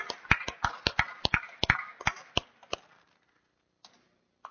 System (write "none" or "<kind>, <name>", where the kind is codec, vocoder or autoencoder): none